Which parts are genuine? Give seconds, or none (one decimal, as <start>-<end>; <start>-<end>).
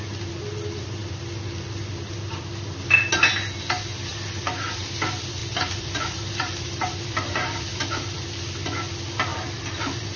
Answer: 0.0-5.4; 8.4-9.3